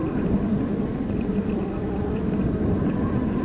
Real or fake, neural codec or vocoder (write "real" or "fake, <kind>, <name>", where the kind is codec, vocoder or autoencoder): real